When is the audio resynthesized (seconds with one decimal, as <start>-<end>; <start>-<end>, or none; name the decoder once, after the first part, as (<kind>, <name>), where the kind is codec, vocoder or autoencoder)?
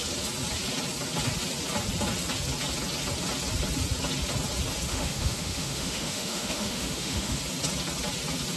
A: 4.9-7.4 (autoencoder, DAC-VAE)